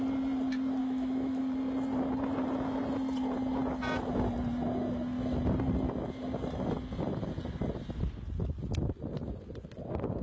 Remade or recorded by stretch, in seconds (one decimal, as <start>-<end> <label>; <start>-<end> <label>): 0.0-0.8 recorded; 0.8-1.4 remade; 1.4-10.2 recorded